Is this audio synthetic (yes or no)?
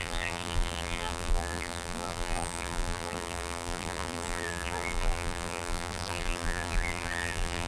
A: yes